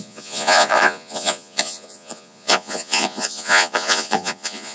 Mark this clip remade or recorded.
remade